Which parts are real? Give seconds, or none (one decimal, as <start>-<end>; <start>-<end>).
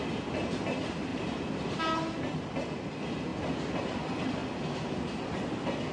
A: 0.0-1.1; 1.8-5.9